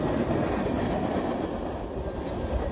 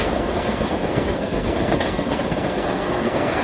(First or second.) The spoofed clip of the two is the second